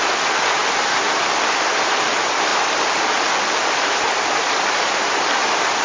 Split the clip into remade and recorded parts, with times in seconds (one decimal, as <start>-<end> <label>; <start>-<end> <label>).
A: 0.0-5.8 recorded